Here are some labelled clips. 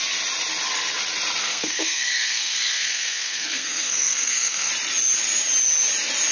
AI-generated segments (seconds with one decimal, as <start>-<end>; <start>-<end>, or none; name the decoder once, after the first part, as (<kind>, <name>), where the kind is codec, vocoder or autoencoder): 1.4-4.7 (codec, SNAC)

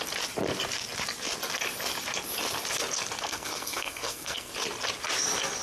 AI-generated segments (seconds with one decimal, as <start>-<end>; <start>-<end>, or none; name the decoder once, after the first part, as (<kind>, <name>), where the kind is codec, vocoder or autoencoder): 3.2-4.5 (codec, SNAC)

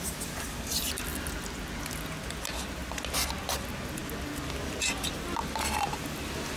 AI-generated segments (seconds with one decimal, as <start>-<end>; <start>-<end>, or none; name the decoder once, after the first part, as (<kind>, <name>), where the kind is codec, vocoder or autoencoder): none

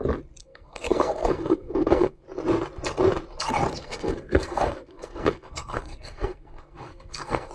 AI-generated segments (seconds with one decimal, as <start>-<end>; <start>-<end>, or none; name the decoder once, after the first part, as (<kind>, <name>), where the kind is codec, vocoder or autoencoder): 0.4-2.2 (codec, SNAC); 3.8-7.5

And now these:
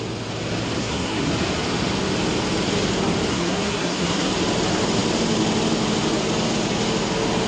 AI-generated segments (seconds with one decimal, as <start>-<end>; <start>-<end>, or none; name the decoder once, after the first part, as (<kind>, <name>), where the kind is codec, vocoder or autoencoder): 0.8-1.3 (codec, SNAC); 3.3-4.3

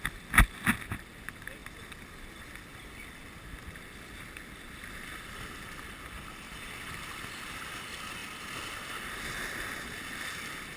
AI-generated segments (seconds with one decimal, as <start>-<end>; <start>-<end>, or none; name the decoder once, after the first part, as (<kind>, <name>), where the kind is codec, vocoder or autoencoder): none

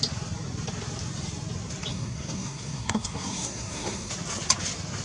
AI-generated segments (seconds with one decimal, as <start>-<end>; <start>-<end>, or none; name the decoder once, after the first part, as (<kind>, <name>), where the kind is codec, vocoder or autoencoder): 1.9-4.1 (codec, SNAC)

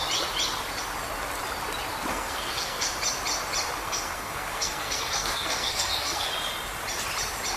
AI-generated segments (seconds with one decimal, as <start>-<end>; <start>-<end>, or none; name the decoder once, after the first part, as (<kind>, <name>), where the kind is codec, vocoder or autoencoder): 2.1-2.9 (codec, SNAC); 3.8-6.3